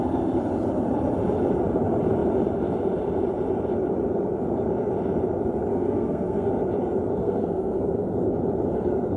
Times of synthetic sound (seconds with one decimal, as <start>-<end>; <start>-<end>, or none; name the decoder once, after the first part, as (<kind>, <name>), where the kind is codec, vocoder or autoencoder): 5.7-6.5 (codec, SNAC); 7.2-7.9